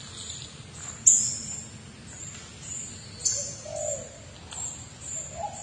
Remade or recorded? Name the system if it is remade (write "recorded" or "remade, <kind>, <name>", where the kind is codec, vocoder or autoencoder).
recorded